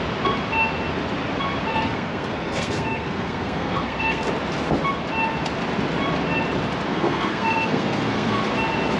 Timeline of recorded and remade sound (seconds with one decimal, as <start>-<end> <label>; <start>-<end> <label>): 0.0-1.7 recorded; 1.7-4.2 remade; 4.2-6.9 recorded; 6.9-8.4 remade; 8.4-9.0 recorded